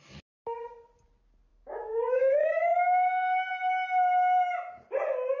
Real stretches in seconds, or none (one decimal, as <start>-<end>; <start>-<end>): 0.0-1.5; 3.5-5.4